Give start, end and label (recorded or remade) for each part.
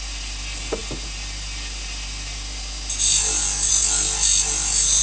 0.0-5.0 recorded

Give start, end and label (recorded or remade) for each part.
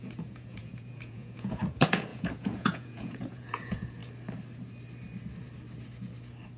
0.0-4.0 remade; 4.0-6.6 recorded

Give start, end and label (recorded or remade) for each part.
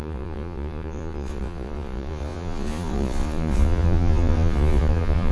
0.0-5.3 remade